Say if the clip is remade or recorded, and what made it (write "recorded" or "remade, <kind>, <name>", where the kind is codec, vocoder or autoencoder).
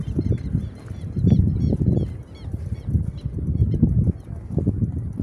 recorded